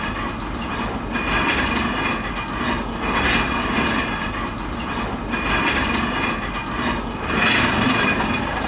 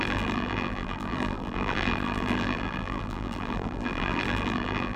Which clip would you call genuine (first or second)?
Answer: first